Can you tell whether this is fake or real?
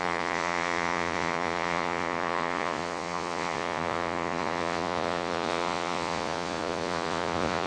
fake